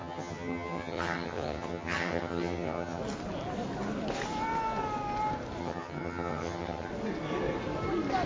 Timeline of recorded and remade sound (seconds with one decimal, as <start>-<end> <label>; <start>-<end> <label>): 0.0-3.0 remade; 3.0-5.6 recorded; 5.6-6.9 remade; 6.9-8.3 recorded